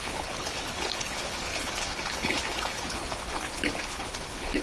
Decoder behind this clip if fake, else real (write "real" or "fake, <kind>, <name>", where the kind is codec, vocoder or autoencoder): fake, codec, HILCodec